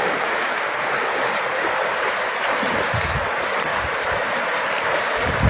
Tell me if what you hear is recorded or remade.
remade